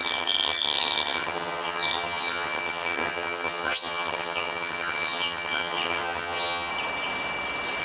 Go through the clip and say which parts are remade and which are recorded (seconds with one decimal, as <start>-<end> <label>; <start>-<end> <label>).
0.0-6.7 remade; 6.7-7.8 recorded